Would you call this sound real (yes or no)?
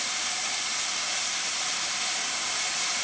yes